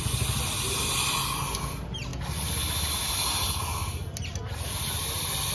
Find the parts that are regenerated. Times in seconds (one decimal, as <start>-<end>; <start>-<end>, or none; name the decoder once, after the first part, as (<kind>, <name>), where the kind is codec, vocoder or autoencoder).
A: none